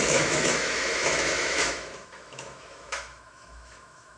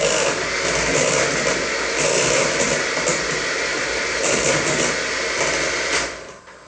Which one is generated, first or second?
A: first